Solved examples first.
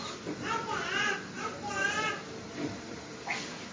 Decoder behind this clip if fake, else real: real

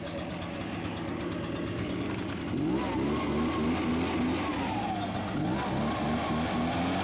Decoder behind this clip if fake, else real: real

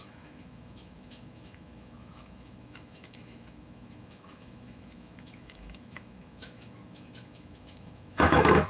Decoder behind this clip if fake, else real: fake, autoencoder, DAC-VAE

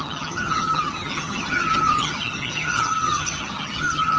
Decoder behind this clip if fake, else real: fake, vocoder, HiFi-GAN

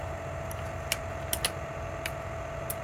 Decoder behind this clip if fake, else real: real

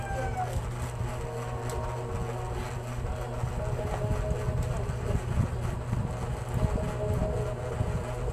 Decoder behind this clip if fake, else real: real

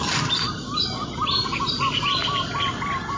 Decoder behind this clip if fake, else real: fake, vocoder, BigVGAN v2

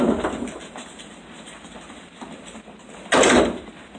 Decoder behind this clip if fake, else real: real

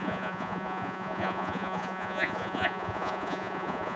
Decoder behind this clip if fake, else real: fake, vocoder, Vocos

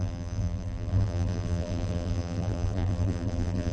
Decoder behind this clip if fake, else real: fake, vocoder, BigVGAN v2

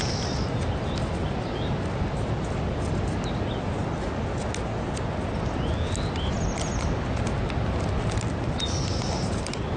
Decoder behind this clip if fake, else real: real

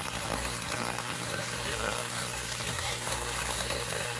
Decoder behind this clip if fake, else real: fake, codec, SNAC